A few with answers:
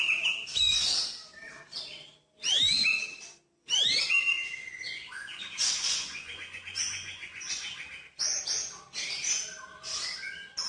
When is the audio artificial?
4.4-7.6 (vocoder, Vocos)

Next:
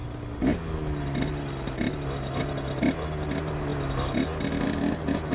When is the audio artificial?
none

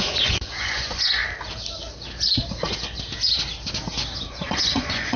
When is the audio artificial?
0.0-1.2 (vocoder, Vocos); 4.3-5.2

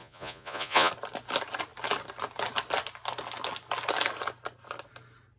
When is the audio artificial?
0.0-0.9 (vocoder, Vocos)